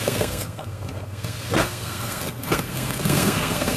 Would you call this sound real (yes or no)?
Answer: no